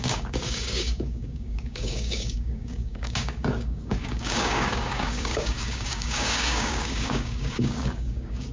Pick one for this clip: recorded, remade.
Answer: remade